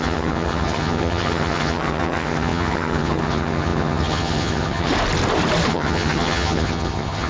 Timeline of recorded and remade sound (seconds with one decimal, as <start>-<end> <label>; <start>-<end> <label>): 0.0-4.9 remade; 4.9-5.7 recorded; 5.7-7.3 remade

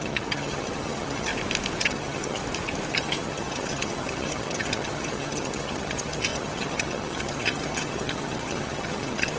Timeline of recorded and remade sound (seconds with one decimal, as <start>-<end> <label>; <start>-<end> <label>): 0.0-1.3 remade; 1.3-1.8 recorded; 1.8-2.4 remade; 2.4-2.9 recorded; 2.9-9.4 remade

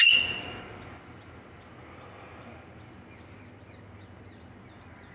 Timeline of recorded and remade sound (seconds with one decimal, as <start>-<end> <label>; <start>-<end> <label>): 0.0-5.1 recorded

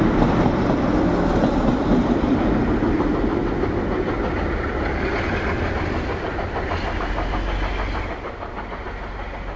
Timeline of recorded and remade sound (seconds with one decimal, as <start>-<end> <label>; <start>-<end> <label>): 0.0-9.6 recorded

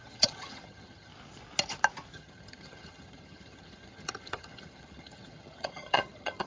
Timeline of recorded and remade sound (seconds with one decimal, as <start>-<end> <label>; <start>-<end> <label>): 0.0-1.1 remade; 1.1-2.1 recorded; 2.1-6.5 remade

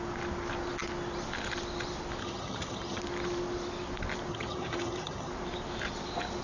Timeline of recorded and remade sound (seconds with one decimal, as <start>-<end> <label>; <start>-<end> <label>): 0.0-2.2 recorded; 2.2-3.0 remade; 3.0-4.3 recorded; 4.3-5.3 remade; 5.3-6.4 recorded

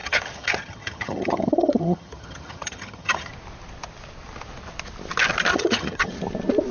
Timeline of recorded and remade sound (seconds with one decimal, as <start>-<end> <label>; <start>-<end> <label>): 0.0-3.3 remade; 3.3-5.5 recorded; 5.5-6.1 remade; 6.1-6.7 recorded

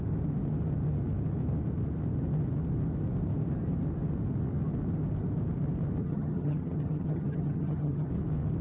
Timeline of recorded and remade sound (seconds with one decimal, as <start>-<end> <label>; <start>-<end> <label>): 0.0-6.0 recorded; 6.0-8.1 remade; 8.1-8.6 recorded